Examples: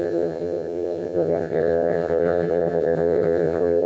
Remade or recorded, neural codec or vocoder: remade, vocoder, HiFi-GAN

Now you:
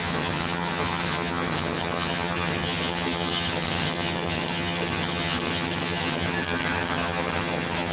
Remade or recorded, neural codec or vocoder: remade, vocoder, HiFi-GAN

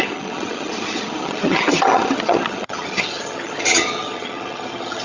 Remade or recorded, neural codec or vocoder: remade, vocoder, HiFi-GAN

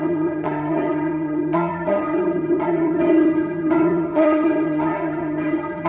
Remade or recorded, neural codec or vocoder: remade, vocoder, HiFi-GAN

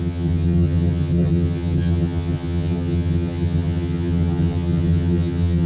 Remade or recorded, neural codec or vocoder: remade, vocoder, HiFi-GAN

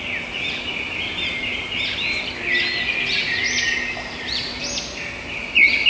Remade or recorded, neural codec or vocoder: recorded